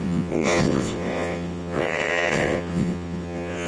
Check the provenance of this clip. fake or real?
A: fake